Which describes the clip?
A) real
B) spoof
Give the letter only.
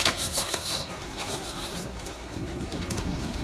B